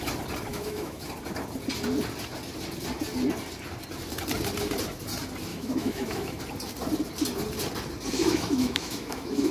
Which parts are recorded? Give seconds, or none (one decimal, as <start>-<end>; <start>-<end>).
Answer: 0.0-0.5; 1.1-5.5; 6.4-8.1